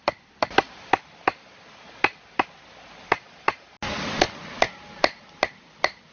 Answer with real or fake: real